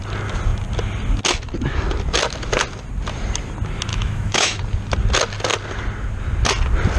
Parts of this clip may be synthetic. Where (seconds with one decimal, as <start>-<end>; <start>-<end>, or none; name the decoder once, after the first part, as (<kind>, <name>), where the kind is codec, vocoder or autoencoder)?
3.9-4.6 (autoencoder, DAC-VAE)